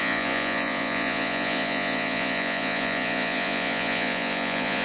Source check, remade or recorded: remade